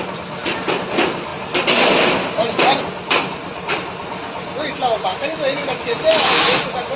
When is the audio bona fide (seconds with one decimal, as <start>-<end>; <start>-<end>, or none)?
0.0-5.1; 6.6-7.0